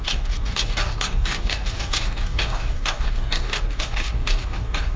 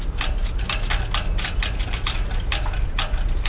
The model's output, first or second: first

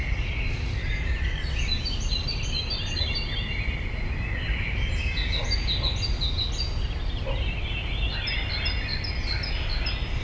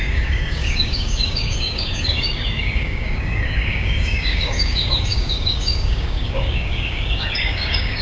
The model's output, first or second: second